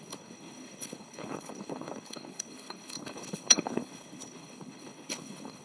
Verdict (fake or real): fake